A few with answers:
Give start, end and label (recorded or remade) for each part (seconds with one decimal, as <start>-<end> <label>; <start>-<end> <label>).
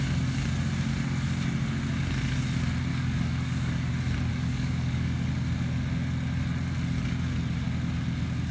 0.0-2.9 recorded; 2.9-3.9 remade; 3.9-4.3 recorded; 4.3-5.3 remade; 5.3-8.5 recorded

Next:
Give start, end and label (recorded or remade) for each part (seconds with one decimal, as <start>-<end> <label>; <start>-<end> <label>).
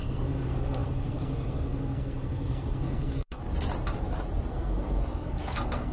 0.0-3.4 remade; 3.4-4.5 recorded; 4.5-5.9 remade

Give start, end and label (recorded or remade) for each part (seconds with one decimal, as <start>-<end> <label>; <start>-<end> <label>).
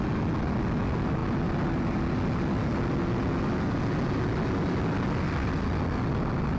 0.0-6.6 recorded